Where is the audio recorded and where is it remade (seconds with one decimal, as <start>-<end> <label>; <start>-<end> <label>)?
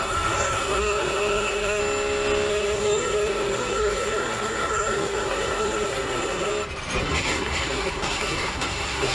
0.0-1.8 remade; 1.8-2.5 recorded; 2.5-6.5 remade; 6.5-7.0 recorded; 7.0-9.1 remade